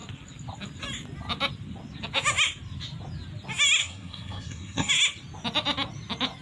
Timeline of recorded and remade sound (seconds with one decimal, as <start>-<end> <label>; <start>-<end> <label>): 0.0-3.8 recorded; 3.8-4.9 remade; 4.9-6.4 recorded